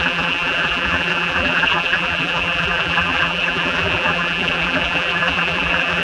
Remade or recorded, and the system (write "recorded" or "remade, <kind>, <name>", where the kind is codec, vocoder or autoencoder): remade, vocoder, BigVGAN v2